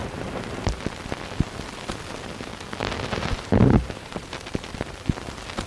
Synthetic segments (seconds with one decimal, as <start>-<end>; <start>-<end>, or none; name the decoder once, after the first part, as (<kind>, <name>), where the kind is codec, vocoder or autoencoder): 3.4-4.9 (vocoder, BigVGAN v2)